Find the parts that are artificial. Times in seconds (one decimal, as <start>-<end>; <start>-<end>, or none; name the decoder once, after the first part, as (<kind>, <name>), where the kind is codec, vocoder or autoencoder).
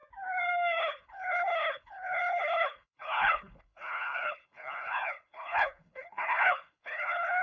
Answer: 0.8-7.4 (codec, HILCodec)